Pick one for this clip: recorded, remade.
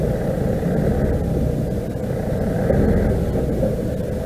recorded